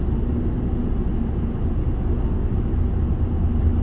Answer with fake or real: real